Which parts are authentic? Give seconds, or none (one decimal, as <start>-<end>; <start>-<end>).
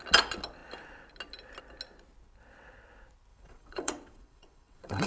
0.0-3.3